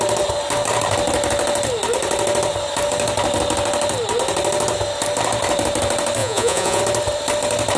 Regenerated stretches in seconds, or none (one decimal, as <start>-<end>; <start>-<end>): 6.2-6.8